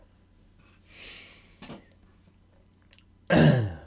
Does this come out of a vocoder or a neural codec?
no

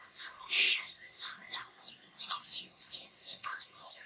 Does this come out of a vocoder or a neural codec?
yes